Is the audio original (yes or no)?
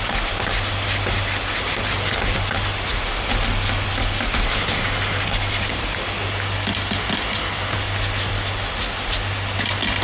yes